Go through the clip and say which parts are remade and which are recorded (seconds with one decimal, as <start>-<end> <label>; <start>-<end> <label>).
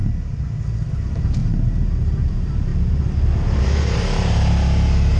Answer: 0.0-0.9 recorded; 0.9-1.4 remade; 1.4-2.0 recorded; 2.0-2.7 remade; 2.7-3.6 recorded; 3.6-5.2 remade